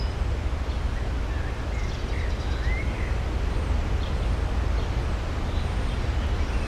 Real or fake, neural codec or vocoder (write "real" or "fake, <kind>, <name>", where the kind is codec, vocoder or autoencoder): real